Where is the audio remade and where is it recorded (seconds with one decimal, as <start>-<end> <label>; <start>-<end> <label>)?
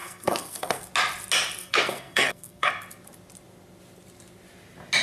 0.0-0.9 remade; 0.9-1.6 recorded; 1.6-2.7 remade; 2.7-5.0 recorded